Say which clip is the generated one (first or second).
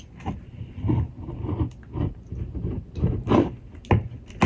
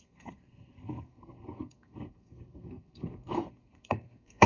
second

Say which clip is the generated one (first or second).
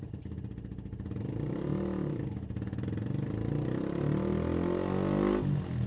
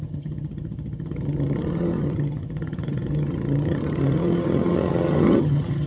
second